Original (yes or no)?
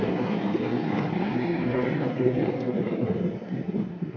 no